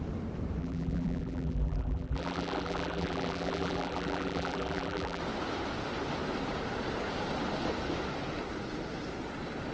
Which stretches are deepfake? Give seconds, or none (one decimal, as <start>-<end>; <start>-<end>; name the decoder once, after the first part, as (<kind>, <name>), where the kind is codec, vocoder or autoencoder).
0.6-5.2 (vocoder, BigVGAN v2)